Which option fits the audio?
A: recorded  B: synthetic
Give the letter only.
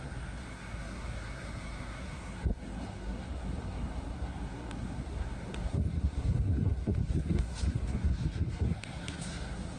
B